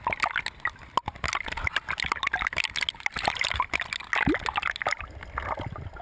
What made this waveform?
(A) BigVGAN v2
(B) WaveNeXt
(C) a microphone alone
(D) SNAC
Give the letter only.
C